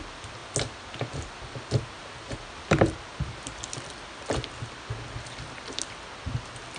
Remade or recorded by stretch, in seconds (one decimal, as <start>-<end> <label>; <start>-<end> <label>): 0.0-6.8 recorded